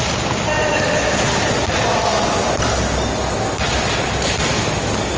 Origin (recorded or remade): recorded